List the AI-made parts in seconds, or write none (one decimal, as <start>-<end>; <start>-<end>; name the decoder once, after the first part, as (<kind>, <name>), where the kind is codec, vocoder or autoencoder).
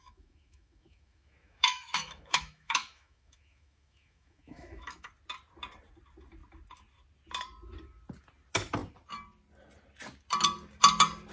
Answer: 0.0-5.1 (autoencoder, DAC-VAE)